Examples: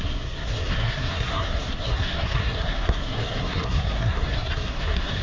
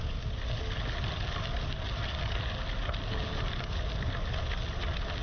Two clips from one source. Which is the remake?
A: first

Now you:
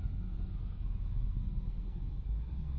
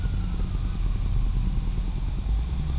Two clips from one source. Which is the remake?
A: first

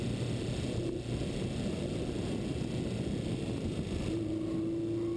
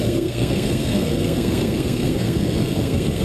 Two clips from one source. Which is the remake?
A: second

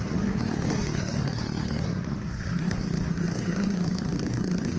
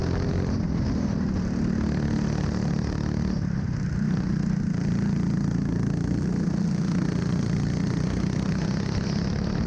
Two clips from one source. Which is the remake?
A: first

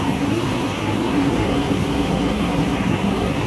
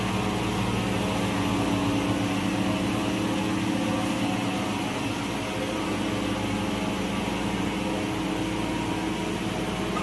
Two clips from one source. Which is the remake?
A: first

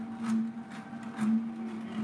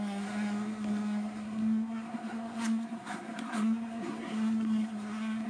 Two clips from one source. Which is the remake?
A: second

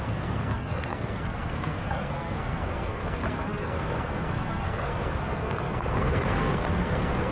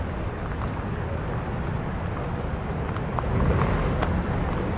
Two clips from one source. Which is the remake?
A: first